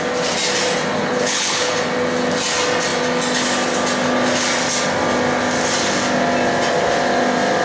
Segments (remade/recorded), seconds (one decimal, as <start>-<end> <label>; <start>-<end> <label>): 0.0-1.0 recorded; 1.0-1.7 remade; 1.7-7.6 recorded

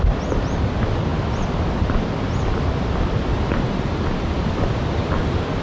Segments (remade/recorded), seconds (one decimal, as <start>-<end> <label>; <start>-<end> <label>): 0.0-5.6 recorded

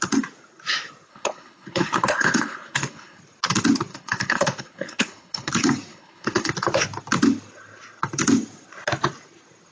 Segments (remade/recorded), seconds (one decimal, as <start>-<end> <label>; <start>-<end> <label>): 0.0-1.1 recorded; 1.1-3.2 remade; 3.2-3.9 recorded; 3.9-5.5 remade; 5.5-5.9 recorded; 5.9-6.5 remade; 6.5-9.7 recorded